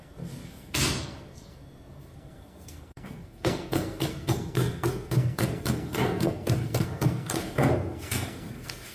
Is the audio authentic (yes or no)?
no